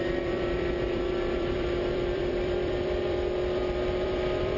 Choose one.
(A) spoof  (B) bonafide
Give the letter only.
A